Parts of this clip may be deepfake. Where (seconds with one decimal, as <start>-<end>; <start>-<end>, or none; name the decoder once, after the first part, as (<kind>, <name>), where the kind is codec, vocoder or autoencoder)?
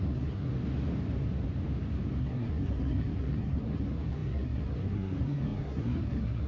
0.0-0.5 (codec, SNAC); 2.2-6.5